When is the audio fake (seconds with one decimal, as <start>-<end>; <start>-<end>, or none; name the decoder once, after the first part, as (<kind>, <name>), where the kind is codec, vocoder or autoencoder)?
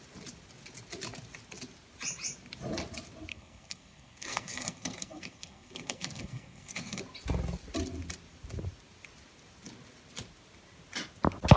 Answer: 3.3-7.0 (codec, SNAC)